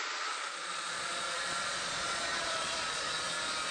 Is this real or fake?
fake